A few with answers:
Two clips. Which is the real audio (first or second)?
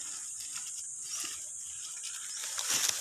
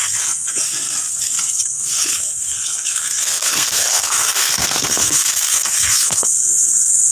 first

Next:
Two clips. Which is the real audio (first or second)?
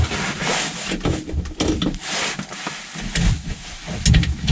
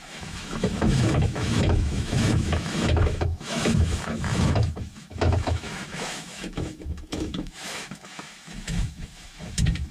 first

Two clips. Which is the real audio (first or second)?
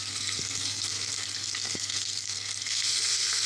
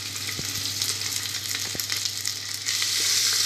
second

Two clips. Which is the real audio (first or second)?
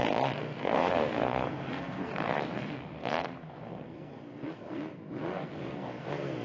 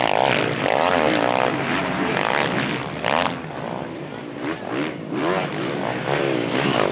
second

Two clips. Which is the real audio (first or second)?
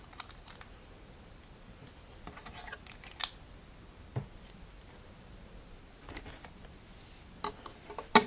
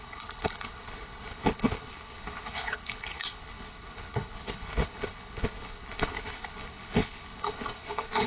first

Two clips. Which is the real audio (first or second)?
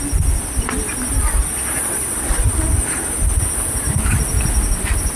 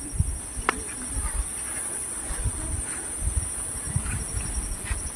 first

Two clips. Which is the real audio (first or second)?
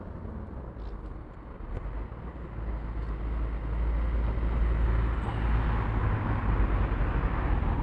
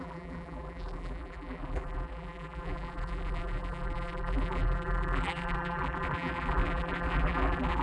first